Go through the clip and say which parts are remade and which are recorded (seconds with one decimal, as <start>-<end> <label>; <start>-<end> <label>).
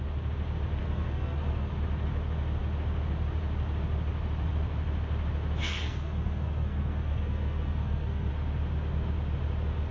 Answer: 0.0-0.8 recorded; 0.8-1.7 remade; 1.7-5.6 recorded; 5.6-8.3 remade; 8.3-9.9 recorded